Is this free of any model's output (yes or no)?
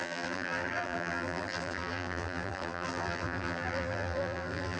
no